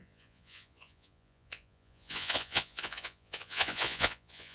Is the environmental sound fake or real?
fake